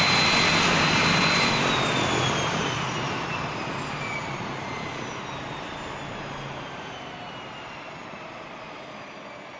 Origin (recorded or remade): recorded